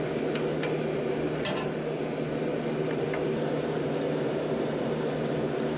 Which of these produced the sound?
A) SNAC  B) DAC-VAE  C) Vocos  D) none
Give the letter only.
D